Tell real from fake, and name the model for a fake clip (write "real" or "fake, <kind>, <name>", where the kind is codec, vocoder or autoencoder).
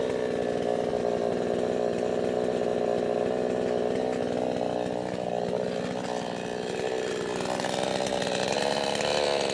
real